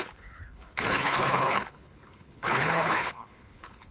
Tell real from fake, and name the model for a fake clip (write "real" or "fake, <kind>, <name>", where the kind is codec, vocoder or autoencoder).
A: fake, codec, HILCodec